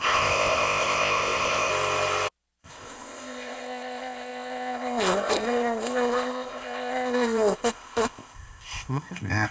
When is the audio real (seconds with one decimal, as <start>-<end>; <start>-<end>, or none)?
1.7-2.6